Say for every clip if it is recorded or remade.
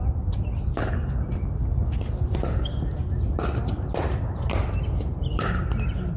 recorded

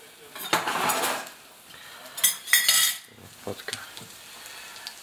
recorded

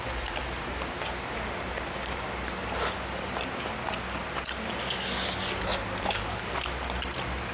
recorded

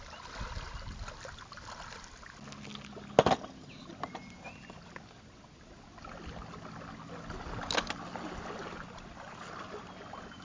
recorded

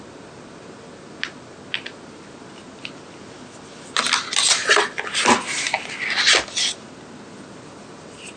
recorded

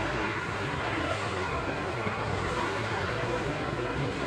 remade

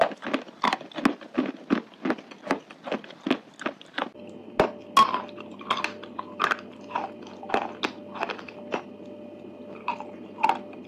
recorded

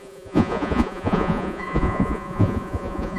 remade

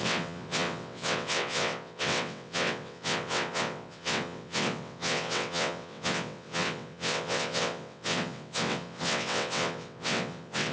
remade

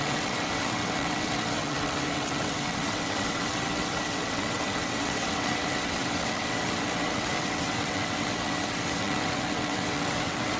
remade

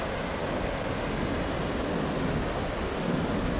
recorded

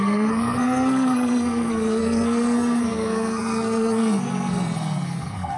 remade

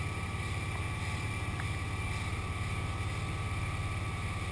recorded